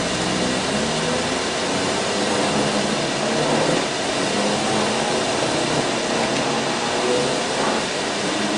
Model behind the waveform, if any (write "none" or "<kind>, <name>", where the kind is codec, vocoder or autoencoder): none